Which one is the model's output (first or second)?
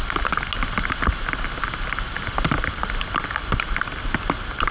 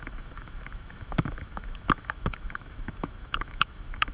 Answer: second